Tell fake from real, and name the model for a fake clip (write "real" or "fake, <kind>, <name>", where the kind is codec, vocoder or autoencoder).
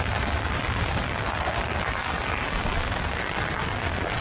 real